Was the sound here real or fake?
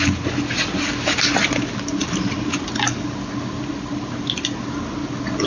real